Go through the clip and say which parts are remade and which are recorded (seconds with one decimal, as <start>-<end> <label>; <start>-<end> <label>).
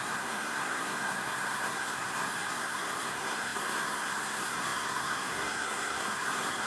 0.0-6.7 remade